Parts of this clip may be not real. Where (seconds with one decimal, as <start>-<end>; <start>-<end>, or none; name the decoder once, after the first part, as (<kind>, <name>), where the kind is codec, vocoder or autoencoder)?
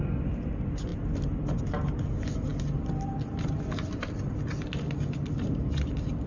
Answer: 0.9-1.6 (vocoder, BigVGAN v2); 2.5-3.3